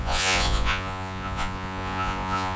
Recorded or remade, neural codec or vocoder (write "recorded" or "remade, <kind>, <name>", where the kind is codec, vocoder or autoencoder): remade, vocoder, Vocos